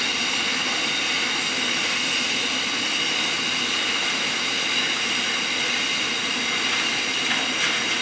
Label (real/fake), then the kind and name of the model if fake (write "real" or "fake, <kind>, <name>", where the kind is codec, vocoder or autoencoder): real